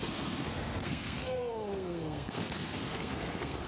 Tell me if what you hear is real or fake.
fake